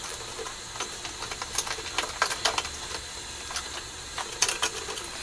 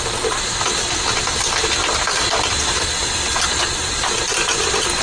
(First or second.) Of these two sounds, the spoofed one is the second